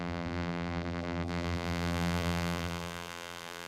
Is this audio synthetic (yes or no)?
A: yes